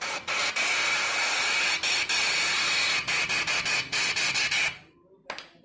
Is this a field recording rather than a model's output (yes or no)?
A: yes